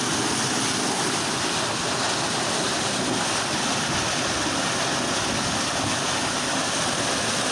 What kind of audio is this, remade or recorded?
recorded